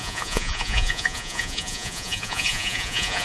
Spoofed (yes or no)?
yes